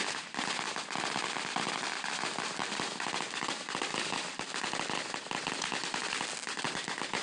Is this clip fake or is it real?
real